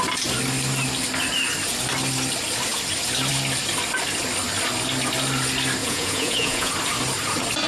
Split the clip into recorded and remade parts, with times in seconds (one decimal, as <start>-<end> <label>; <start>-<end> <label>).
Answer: 0.0-5.8 recorded; 5.8-6.7 remade; 6.7-7.7 recorded